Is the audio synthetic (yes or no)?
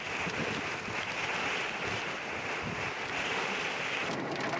no